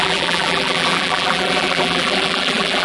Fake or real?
fake